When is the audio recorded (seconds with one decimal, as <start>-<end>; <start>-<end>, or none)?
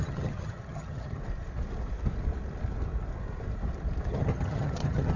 1.2-4.1